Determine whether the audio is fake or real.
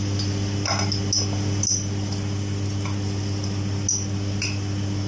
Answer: real